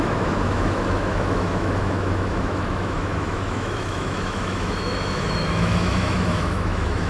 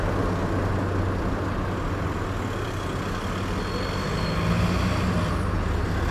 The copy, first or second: first